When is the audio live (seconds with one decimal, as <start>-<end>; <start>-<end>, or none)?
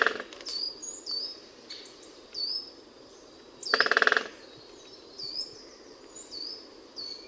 0.0-0.8; 4.8-7.3